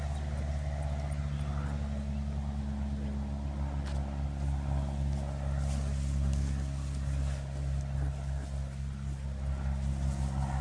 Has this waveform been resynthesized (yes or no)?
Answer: no